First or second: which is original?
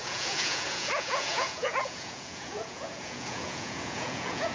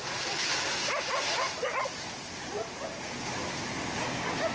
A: second